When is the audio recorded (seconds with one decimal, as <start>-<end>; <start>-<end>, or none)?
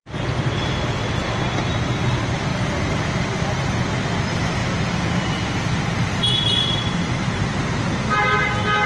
0.0-8.9